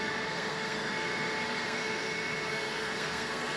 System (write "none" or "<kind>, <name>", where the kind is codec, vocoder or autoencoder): codec, SNAC